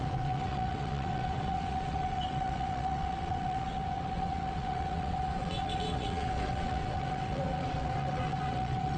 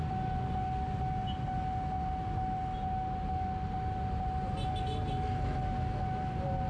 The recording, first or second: second